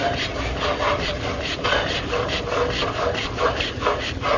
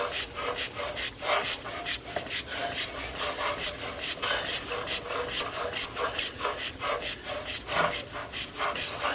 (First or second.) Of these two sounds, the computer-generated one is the first